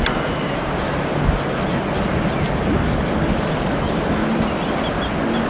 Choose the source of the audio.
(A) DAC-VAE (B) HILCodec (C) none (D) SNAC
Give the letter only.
C